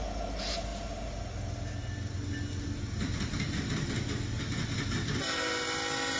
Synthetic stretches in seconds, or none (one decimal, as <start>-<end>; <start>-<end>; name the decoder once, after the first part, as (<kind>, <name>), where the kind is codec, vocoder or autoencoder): none